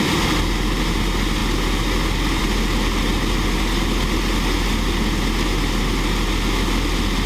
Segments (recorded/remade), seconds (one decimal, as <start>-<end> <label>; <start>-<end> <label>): 0.0-7.3 recorded